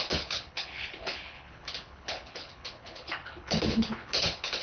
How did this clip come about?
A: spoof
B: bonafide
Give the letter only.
A